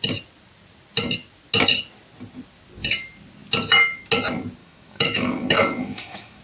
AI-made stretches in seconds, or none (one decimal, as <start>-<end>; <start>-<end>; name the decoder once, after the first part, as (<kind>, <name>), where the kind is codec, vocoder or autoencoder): 4.6-6.4 (autoencoder, DAC-VAE)